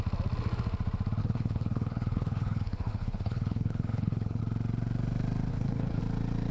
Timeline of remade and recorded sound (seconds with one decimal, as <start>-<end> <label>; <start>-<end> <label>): 0.0-1.2 recorded; 1.2-4.4 remade; 4.4-5.5 recorded; 5.5-6.0 remade; 6.0-6.5 recorded